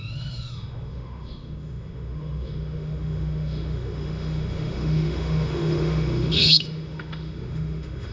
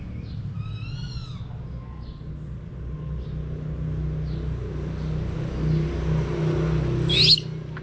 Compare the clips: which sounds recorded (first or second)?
second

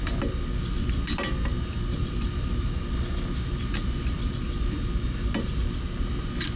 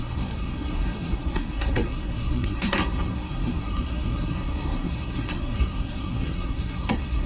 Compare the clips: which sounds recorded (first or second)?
first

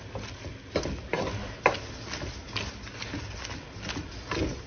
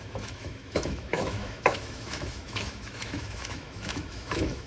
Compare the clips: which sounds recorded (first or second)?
first